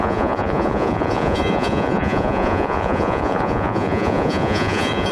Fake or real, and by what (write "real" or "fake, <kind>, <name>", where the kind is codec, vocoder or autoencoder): fake, vocoder, Vocos